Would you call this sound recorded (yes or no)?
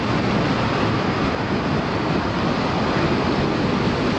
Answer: yes